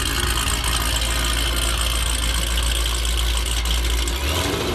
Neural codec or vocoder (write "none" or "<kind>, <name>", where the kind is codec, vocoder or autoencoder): none